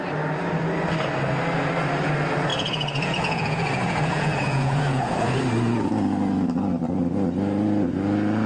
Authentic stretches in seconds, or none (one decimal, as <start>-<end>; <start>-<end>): 0.0-2.5; 5.4-8.5